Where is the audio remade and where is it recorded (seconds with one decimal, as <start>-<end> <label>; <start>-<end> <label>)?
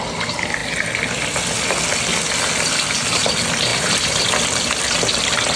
0.0-3.7 recorded; 3.7-4.2 remade; 4.2-5.6 recorded